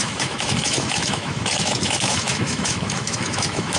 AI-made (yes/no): yes